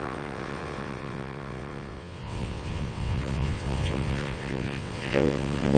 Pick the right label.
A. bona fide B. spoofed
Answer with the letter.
B